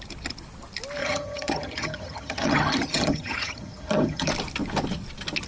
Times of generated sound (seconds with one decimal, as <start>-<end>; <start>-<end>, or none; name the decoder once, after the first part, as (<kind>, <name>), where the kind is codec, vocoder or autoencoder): 1.0-4.3 (vocoder, HiFi-GAN)